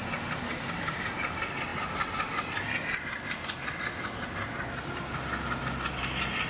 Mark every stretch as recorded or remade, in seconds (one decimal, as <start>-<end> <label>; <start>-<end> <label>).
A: 0.0-1.2 remade; 1.2-6.5 recorded